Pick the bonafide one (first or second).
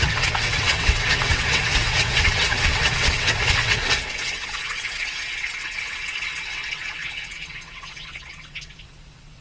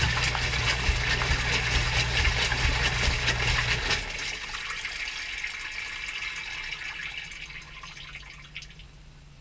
second